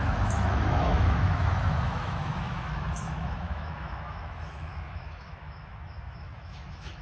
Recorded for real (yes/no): no